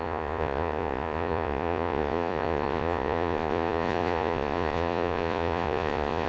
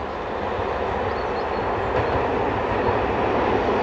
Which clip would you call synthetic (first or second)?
first